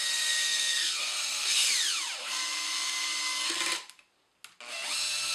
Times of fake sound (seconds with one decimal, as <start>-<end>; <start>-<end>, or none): 0.0-1.7; 2.2-3.6